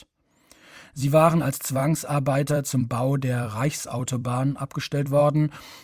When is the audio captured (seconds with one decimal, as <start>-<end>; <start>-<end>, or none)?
1.8-2.5